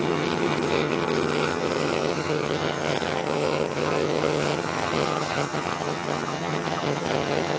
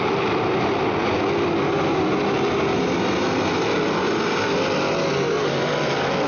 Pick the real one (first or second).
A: second